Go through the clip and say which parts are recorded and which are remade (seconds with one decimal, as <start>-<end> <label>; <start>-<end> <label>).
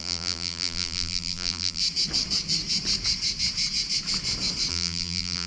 0.0-1.8 remade; 1.8-4.7 recorded; 4.7-5.5 remade